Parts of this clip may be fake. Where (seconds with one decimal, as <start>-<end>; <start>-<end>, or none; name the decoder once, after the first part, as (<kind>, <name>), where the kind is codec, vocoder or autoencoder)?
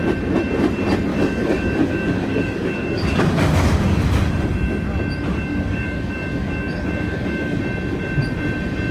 1.1-4.3 (codec, DAC); 5.3-7.6